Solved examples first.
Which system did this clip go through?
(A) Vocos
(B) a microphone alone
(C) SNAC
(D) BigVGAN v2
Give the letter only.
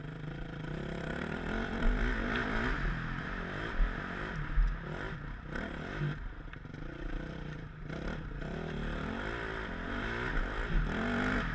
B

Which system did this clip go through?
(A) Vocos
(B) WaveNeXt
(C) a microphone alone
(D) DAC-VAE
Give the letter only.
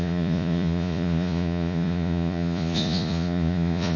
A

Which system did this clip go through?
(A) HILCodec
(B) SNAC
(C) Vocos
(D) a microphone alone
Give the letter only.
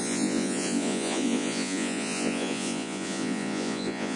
C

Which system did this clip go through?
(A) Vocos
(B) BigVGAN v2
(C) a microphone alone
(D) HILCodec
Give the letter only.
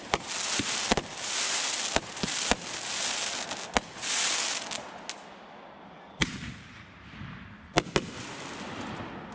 C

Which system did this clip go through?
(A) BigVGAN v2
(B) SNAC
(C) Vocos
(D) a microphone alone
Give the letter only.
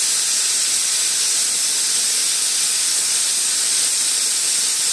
D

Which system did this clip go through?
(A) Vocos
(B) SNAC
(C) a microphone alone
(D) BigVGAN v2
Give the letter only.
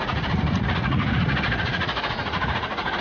A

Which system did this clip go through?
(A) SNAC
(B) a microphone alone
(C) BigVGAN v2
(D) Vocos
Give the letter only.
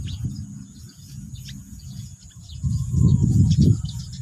D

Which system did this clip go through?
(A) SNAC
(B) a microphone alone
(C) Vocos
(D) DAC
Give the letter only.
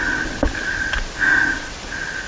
B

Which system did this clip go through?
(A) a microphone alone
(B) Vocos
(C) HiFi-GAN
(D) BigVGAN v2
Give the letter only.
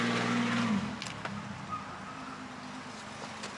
A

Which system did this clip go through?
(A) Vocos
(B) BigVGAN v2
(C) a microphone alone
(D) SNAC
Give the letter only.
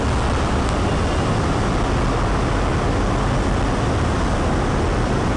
C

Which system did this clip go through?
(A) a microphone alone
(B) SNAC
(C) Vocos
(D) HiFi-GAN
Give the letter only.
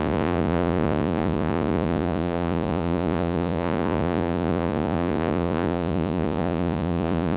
C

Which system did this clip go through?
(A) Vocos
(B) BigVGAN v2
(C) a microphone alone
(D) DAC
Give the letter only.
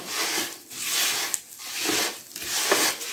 C